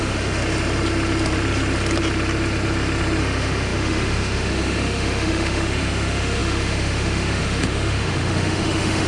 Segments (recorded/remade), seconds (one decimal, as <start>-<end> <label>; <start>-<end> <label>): 0.0-0.4 remade; 0.4-3.2 recorded; 3.2-9.1 remade